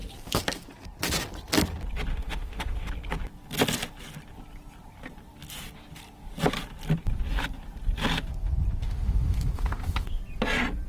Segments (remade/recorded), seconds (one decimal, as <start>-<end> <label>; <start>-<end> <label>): 0.0-2.1 recorded; 2.1-2.9 remade; 2.9-8.8 recorded; 8.8-10.2 remade; 10.2-10.9 recorded